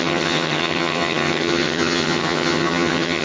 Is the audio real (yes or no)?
no